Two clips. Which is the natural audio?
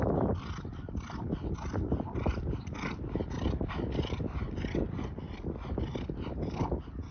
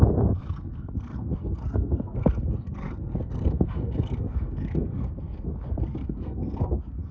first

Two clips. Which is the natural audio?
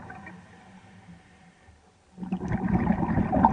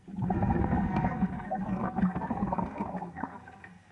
first